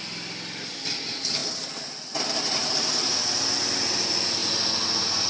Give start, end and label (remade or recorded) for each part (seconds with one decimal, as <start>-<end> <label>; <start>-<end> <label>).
0.0-5.3 recorded